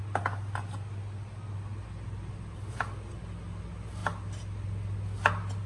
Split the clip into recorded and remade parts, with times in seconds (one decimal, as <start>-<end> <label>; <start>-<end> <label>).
0.0-5.7 recorded